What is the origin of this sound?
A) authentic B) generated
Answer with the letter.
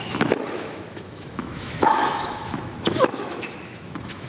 B